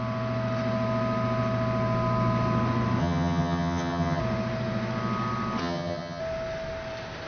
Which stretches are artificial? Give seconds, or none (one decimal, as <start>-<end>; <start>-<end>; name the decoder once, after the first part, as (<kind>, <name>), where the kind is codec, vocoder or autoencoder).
3.0-4.2 (vocoder, HiFi-GAN); 5.6-6.2